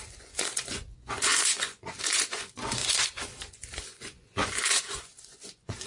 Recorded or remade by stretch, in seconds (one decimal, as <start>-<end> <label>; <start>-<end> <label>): 0.0-5.9 remade